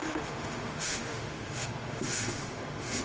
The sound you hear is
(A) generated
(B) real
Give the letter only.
A